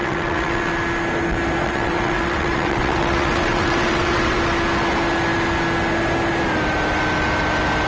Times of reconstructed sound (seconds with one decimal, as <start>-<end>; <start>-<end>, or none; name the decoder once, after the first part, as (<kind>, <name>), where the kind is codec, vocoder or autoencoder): 0.0-0.7 (vocoder, WaveNeXt); 1.6-4.4